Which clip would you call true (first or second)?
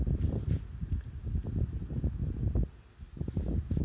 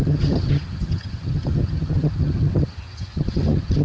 first